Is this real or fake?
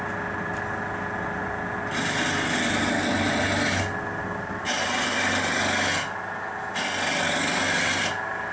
real